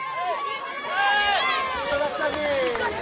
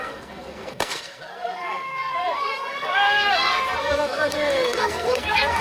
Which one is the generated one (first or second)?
second